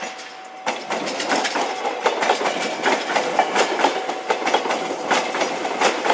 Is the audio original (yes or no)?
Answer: yes